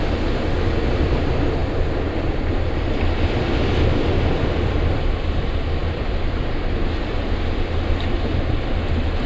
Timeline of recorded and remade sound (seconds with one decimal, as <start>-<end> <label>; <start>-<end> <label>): 0.0-9.3 recorded

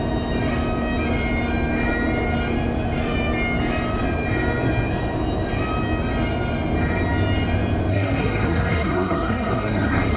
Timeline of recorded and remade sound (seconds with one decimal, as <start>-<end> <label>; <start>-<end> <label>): 0.0-7.9 recorded; 7.9-10.2 remade